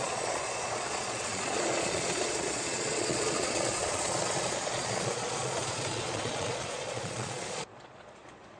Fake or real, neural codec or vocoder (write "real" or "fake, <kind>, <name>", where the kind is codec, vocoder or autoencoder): fake, vocoder, Vocos